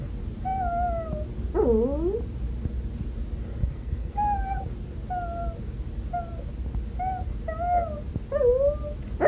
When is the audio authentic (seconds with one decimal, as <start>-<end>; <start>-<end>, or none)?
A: 0.0-3.6; 4.1-9.3